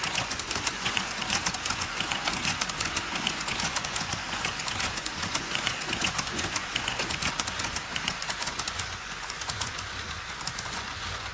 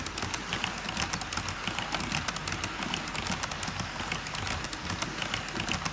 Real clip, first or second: second